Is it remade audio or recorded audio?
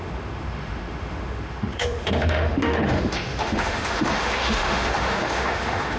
remade